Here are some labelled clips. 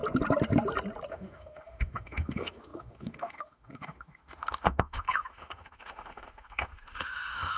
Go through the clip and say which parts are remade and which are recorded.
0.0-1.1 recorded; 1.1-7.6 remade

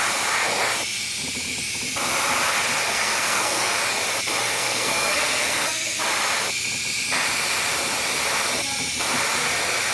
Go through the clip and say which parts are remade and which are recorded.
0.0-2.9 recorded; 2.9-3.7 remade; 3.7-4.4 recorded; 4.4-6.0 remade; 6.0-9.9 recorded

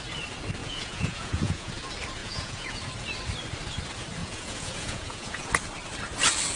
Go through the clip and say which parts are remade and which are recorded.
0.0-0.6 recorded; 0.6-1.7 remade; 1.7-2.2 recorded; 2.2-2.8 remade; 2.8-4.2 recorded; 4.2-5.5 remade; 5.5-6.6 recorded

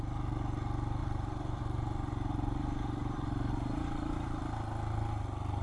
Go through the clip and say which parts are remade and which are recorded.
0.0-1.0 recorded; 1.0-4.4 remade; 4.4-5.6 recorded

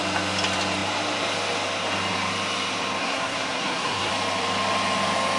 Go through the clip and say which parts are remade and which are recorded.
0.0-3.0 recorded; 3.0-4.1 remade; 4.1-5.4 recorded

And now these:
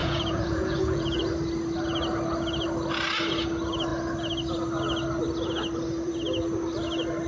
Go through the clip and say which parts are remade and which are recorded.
0.0-1.2 remade; 1.2-7.3 recorded

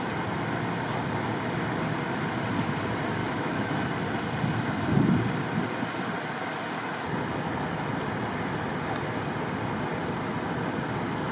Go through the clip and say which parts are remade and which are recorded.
0.0-3.2 recorded; 3.2-3.8 remade; 3.8-11.3 recorded

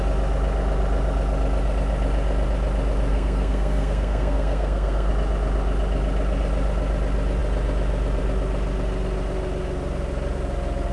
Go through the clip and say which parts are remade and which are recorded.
0.0-3.1 recorded; 3.1-5.1 remade; 5.1-10.9 recorded